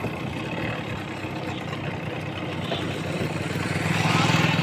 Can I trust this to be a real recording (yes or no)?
yes